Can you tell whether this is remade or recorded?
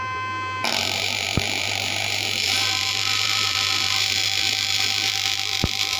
remade